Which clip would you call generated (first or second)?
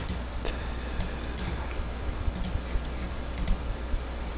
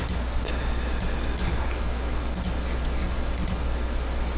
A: first